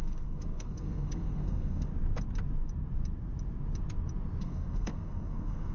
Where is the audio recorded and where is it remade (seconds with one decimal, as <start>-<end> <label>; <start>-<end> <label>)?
0.0-1.9 remade; 1.9-4.4 recorded; 4.4-5.7 remade